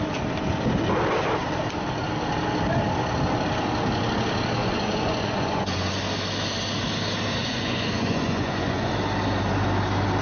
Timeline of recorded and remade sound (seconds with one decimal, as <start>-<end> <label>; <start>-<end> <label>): 0.0-4.6 recorded; 4.6-6.0 remade; 6.0-7.4 recorded; 7.4-8.9 remade; 8.9-10.2 recorded